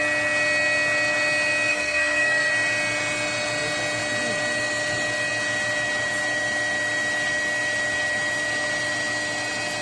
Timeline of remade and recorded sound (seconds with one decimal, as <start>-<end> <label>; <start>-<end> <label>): 0.0-1.7 recorded; 1.7-2.5 remade; 2.5-9.8 recorded

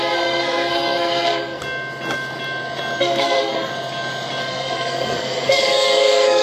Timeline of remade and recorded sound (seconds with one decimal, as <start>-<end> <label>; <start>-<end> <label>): 0.0-1.6 remade; 1.6-3.0 recorded; 3.0-3.7 remade; 3.7-4.4 recorded; 4.4-6.4 remade